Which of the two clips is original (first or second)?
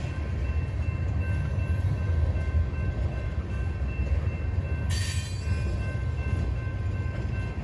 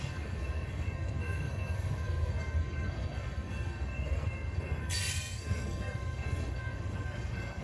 first